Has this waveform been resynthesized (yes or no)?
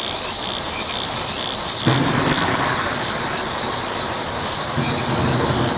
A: no